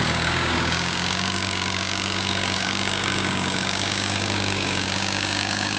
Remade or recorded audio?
remade